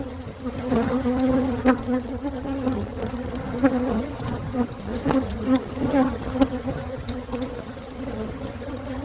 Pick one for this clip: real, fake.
fake